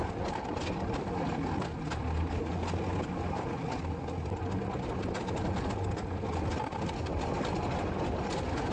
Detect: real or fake real